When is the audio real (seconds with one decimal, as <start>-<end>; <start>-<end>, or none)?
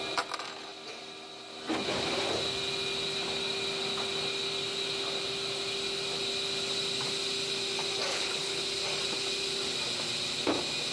0.0-8.1; 8.6-10.9